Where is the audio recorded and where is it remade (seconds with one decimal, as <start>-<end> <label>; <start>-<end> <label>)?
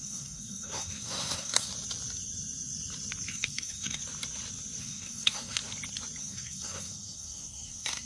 0.0-1.7 remade; 1.7-3.3 recorded; 3.3-4.0 remade; 4.0-4.8 recorded; 4.8-5.6 remade; 5.6-6.2 recorded; 6.2-8.1 remade